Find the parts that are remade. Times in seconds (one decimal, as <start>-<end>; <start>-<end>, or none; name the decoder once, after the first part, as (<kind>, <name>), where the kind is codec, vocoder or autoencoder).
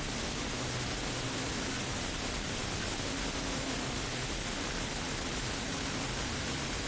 none